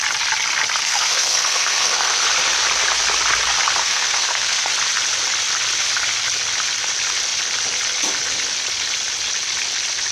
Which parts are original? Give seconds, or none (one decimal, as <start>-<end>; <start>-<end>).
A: 0.0-0.8; 2.2-3.8; 4.7-10.1